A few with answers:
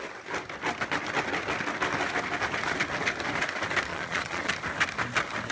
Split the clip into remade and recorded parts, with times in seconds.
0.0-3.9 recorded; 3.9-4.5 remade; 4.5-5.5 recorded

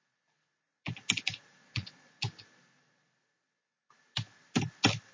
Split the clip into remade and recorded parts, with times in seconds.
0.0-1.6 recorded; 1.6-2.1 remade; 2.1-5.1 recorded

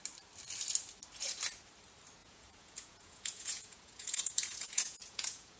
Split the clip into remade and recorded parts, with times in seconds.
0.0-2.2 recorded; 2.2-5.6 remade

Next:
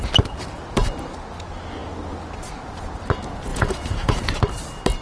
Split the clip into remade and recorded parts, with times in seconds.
0.0-3.5 recorded; 3.5-4.3 remade; 4.3-5.0 recorded